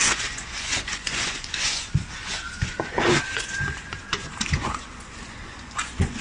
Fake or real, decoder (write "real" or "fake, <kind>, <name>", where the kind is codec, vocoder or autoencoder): fake, vocoder, Vocos